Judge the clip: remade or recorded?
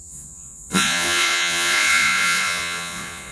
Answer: remade